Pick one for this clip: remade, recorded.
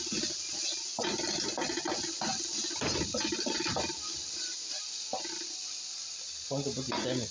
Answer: recorded